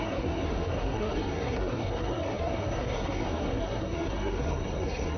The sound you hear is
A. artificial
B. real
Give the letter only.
A